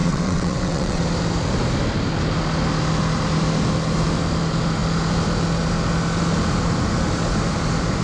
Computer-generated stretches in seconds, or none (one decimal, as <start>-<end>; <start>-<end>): 0.0-1.0